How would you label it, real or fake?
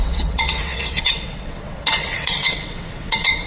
fake